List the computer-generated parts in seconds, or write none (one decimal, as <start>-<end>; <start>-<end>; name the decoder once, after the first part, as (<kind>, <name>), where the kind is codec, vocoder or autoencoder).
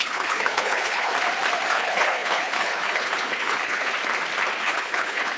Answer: 0.0-1.1 (codec, HILCodec); 1.7-3.9; 4.6-5.4